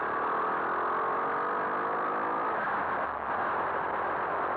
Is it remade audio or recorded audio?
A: recorded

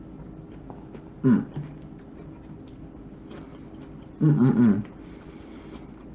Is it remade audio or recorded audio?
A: recorded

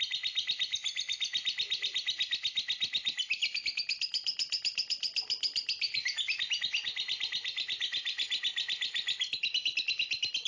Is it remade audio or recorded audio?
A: recorded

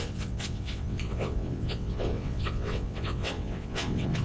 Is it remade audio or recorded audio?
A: remade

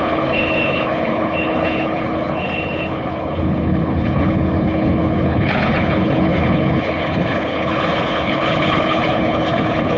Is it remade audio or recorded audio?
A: remade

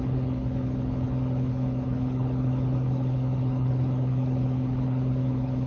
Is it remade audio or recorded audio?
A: remade